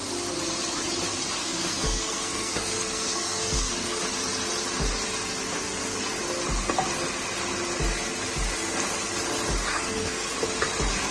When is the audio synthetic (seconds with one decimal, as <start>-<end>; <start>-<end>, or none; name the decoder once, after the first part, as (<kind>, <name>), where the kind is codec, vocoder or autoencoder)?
1.4-4.0 (codec, SNAC); 9.7-10.3